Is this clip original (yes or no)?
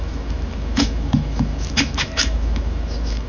no